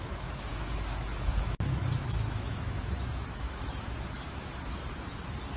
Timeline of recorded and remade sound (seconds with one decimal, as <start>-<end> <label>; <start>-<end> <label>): 0.0-4.8 remade; 4.8-5.6 recorded